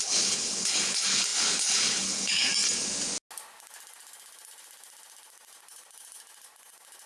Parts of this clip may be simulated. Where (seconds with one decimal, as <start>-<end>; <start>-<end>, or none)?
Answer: 0.0-2.5